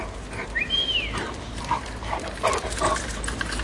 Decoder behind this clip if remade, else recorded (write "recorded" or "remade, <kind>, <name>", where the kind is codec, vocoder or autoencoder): recorded